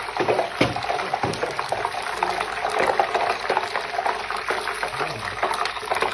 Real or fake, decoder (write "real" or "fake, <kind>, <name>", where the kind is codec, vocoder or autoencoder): real